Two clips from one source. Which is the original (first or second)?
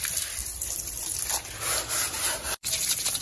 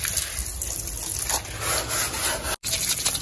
second